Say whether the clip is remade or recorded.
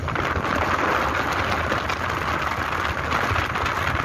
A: recorded